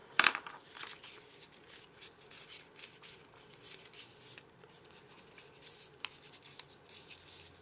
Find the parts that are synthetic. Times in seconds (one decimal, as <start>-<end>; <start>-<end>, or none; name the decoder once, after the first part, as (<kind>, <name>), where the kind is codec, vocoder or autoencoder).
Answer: none